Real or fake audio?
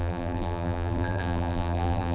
fake